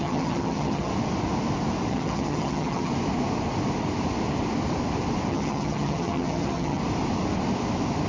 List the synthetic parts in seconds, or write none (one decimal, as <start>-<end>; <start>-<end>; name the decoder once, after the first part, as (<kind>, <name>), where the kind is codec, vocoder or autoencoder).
0.0-0.9 (vocoder, HiFi-GAN); 1.9-2.9; 5.3-6.8